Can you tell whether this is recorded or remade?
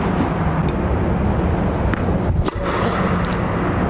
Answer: recorded